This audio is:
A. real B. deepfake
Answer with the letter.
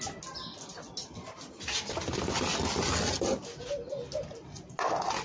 A